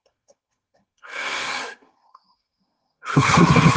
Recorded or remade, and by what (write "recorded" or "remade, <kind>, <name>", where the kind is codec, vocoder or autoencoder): remade, codec, SNAC